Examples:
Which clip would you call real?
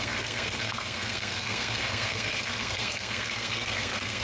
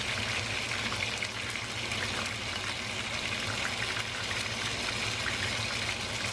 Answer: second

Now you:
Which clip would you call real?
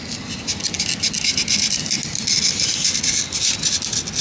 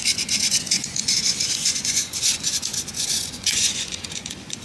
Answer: first